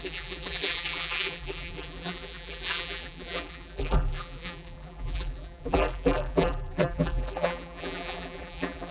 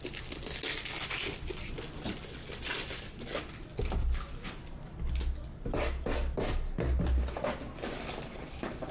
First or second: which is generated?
first